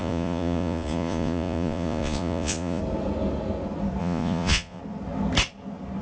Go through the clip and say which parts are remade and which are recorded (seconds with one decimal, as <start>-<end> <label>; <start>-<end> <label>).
0.0-2.8 remade; 2.8-4.0 recorded; 4.0-4.8 remade; 4.8-6.0 recorded